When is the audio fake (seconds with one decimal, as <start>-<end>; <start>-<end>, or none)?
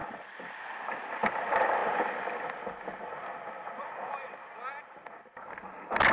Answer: none